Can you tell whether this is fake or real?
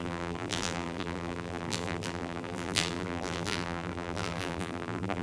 fake